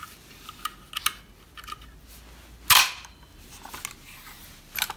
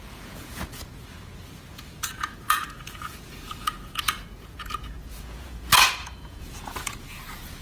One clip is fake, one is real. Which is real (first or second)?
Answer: first